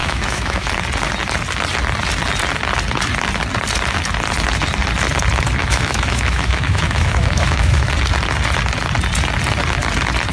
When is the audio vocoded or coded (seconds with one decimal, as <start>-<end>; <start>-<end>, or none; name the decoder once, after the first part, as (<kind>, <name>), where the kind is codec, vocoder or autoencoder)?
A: 0.0-0.7 (autoencoder, DAC-VAE); 5.6-7.9